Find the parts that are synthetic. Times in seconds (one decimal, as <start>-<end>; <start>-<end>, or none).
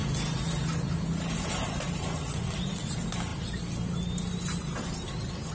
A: 1.1-5.5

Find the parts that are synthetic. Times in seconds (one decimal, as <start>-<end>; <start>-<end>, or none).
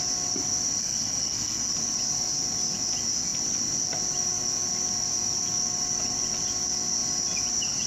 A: 0.8-1.7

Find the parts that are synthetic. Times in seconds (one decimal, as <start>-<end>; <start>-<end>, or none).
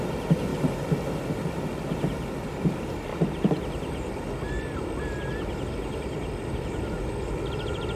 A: none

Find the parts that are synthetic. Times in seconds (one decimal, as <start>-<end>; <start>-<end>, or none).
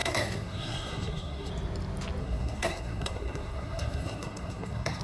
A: 0.0-1.5; 2.2-5.0